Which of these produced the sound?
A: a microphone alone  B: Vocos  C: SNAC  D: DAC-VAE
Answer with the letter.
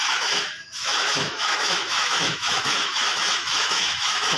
D